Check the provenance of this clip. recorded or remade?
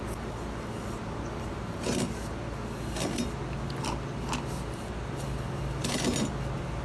recorded